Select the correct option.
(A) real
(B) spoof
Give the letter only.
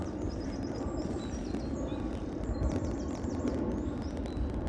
A